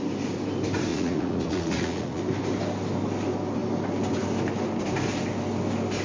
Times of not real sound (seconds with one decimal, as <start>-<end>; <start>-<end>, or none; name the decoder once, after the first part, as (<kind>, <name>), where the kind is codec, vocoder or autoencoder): 0.9-2.2 (vocoder, Vocos)